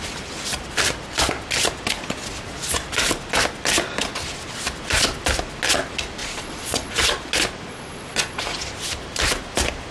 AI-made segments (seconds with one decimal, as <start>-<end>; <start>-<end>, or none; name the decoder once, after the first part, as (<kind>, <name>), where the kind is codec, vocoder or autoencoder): 6.2-7.1 (vocoder, Vocos); 7.7-8.4